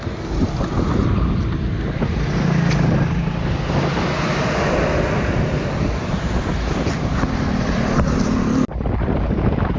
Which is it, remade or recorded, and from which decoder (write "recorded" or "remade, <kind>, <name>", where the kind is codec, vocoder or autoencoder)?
recorded